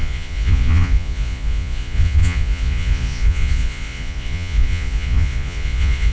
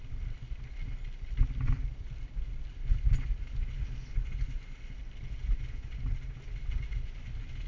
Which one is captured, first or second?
second